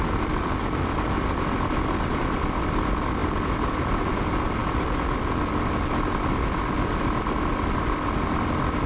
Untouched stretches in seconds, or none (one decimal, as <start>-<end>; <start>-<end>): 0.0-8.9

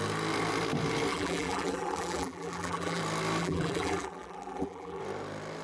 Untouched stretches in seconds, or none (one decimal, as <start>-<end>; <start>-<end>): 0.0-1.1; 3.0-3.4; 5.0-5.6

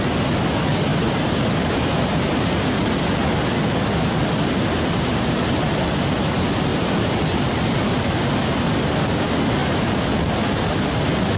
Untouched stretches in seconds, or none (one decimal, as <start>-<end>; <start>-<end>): 0.0-0.9; 1.4-6.7; 7.2-11.4

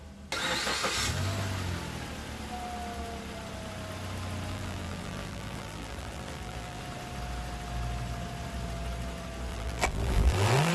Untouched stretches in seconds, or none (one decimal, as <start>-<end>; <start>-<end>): 0.0-4.5; 6.8-9.5

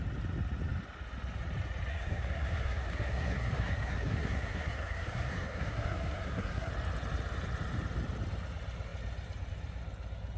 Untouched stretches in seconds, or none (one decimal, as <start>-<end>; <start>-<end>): 0.0-1.9; 6.7-10.4

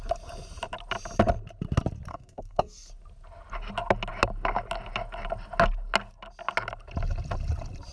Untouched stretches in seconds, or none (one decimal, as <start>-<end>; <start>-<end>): 0.0-2.1; 2.9-7.9

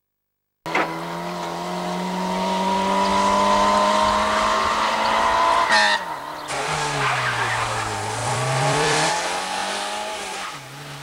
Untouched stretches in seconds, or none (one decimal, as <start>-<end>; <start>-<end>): 0.0-8.2; 9.1-11.0